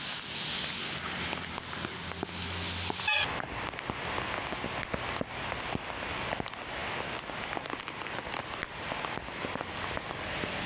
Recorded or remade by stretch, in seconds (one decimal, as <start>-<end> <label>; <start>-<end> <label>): 0.0-10.7 recorded

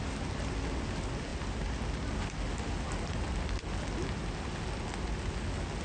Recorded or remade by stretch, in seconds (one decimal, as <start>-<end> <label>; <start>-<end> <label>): 0.0-5.8 recorded